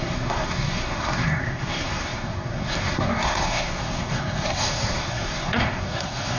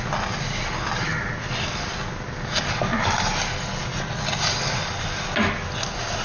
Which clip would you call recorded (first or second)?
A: second